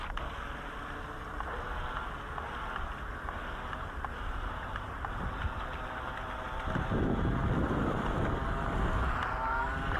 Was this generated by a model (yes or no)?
no